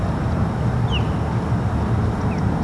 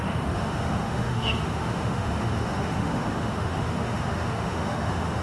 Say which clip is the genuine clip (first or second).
first